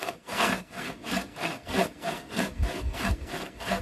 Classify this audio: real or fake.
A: fake